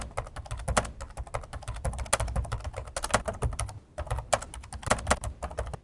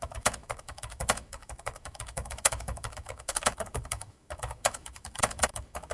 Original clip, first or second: first